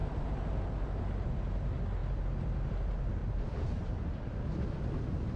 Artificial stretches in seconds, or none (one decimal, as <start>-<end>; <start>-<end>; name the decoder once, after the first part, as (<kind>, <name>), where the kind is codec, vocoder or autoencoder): 3.2-3.9 (vocoder, BigVGAN v2)